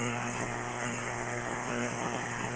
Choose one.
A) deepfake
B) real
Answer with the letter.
A